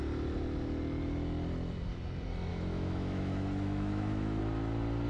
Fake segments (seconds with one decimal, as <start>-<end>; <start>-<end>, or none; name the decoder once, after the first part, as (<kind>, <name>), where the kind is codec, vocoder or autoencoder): 2.5-4.4 (autoencoder, DAC-VAE)